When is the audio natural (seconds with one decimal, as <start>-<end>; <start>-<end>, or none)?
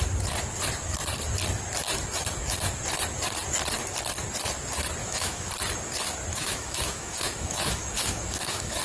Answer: 0.0-5.0; 5.5-6.3